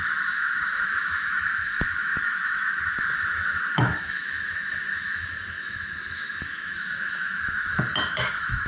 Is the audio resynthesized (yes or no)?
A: yes